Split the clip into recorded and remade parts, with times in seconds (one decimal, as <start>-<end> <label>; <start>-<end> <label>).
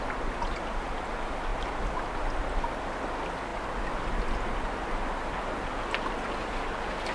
0.0-7.1 recorded